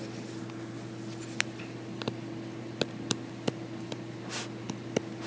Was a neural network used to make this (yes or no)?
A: no